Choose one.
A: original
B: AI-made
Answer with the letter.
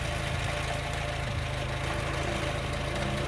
A